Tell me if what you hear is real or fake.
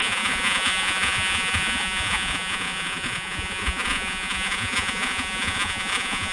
fake